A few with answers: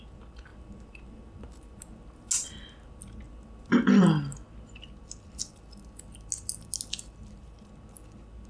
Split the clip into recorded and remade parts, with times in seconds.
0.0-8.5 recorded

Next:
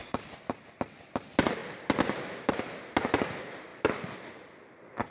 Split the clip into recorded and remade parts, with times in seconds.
0.0-5.1 recorded

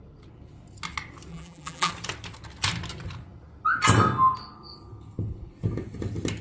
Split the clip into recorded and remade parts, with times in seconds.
0.0-1.3 recorded; 1.3-1.9 remade; 1.9-6.4 recorded

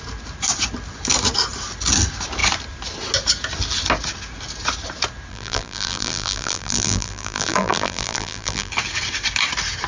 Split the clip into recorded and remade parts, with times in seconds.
0.0-5.3 recorded; 5.3-8.7 remade; 8.7-9.9 recorded